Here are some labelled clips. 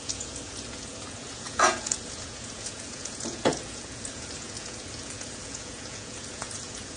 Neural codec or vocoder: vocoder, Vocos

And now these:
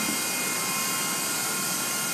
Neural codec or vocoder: none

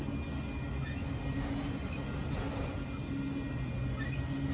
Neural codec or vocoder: none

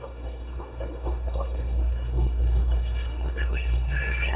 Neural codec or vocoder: codec, SNAC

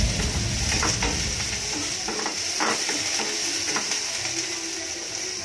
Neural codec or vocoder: vocoder, BigVGAN v2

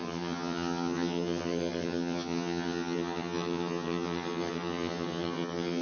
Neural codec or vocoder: vocoder, HiFi-GAN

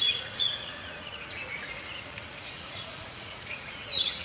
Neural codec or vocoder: vocoder, Vocos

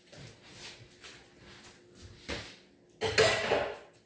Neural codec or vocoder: none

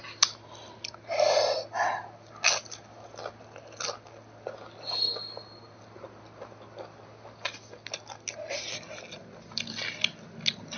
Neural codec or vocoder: none